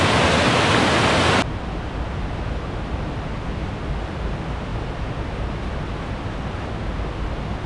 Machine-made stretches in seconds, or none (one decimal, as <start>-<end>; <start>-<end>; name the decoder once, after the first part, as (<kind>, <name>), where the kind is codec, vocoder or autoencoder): none